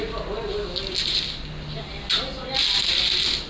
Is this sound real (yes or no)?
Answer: yes